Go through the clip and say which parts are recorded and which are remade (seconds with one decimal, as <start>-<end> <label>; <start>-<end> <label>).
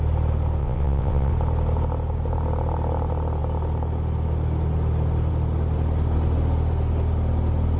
0.0-0.6 recorded; 0.6-1.3 remade; 1.3-7.8 recorded